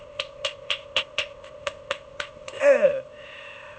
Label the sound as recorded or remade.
remade